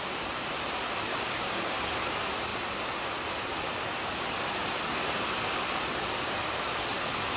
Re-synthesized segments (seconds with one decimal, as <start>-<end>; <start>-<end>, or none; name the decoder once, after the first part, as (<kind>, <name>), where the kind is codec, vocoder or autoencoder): 1.1-1.8 (codec, DAC)